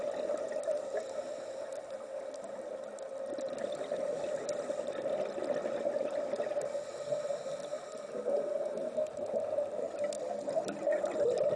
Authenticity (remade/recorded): recorded